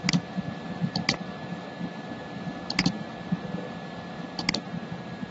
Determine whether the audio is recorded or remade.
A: recorded